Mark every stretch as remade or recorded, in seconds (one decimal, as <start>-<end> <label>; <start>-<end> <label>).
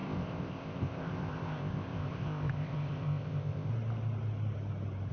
0.0-3.7 remade; 3.7-5.1 recorded